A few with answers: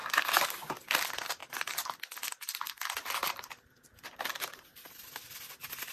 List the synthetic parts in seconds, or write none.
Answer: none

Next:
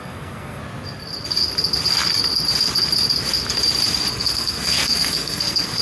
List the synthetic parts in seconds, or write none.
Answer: 0.0-0.6; 4.1-5.8

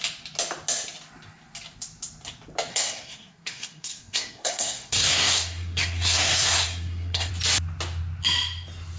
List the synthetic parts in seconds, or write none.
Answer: 2.7-7.3